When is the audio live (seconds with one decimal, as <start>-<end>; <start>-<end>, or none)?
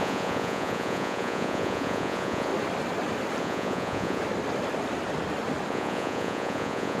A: 2.5-3.4; 4.2-5.7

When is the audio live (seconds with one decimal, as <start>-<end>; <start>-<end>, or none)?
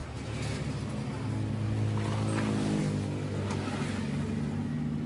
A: 0.0-5.1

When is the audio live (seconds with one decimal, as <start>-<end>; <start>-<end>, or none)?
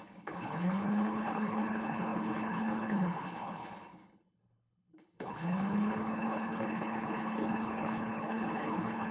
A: none